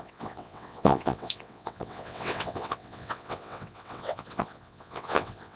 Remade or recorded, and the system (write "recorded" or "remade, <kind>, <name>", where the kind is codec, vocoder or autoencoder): remade, vocoder, WaveNeXt